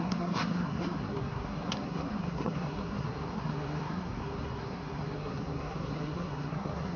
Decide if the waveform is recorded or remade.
remade